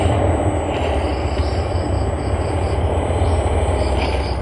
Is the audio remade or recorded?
recorded